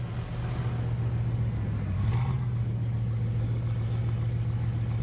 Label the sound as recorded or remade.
recorded